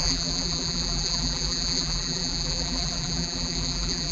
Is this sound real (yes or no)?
no